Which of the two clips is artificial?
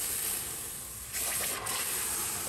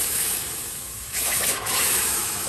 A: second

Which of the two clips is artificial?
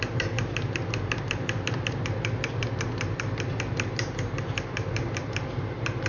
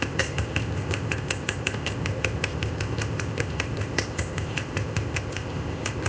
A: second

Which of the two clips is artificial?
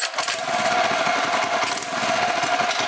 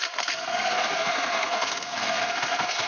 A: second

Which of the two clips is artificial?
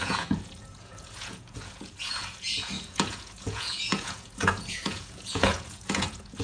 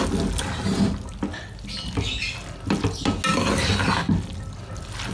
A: first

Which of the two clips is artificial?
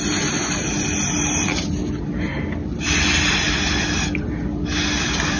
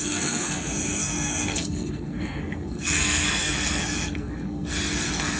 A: second